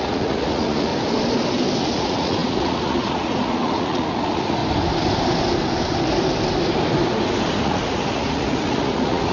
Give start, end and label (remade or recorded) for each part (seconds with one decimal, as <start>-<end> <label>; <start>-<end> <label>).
0.0-0.9 remade; 0.9-1.8 recorded; 1.8-4.6 remade; 4.6-7.6 recorded; 7.6-9.3 remade

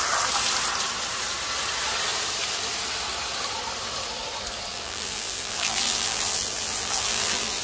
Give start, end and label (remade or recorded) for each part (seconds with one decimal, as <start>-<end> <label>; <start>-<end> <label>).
0.0-4.7 recorded; 4.7-7.6 remade

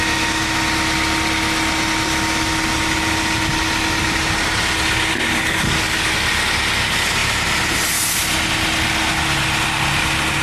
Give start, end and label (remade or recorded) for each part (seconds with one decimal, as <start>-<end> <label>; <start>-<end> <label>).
0.0-5.1 recorded; 5.1-6.1 remade; 6.1-10.4 recorded

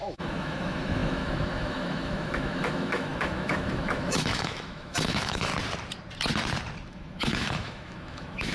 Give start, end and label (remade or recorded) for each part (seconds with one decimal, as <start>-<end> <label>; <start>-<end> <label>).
0.0-5.5 remade; 5.5-6.9 recorded; 6.9-8.5 remade

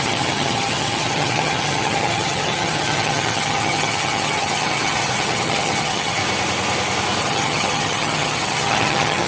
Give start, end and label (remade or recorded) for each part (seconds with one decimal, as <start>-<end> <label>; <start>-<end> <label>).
0.0-6.2 remade; 6.2-7.2 recorded; 7.2-9.3 remade